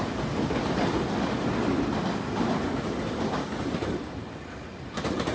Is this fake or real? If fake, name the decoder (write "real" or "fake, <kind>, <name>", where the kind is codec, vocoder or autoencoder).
real